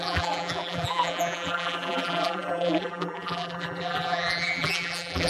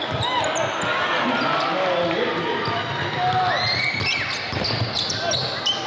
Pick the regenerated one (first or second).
first